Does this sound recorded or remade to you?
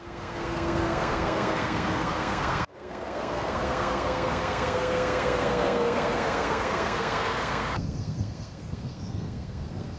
remade